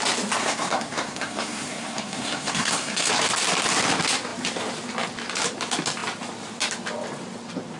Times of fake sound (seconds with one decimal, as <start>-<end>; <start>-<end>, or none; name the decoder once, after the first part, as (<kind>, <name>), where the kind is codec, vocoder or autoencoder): 0.4-3.1 (codec, SNAC)